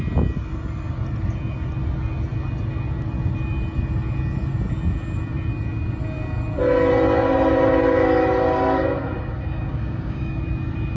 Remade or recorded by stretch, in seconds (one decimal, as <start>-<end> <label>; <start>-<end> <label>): 0.0-9.5 recorded; 9.5-10.4 remade; 10.4-11.0 recorded